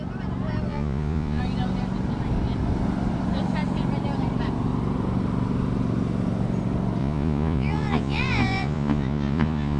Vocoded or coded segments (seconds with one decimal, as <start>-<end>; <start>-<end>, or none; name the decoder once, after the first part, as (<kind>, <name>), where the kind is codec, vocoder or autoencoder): 0.7-1.4 (vocoder, Vocos); 7.0-9.8